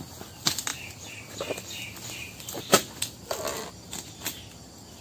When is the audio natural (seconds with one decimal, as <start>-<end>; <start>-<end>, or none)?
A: 0.0-5.0